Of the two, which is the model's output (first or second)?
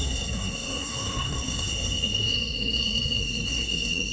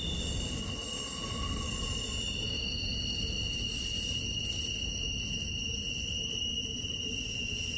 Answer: first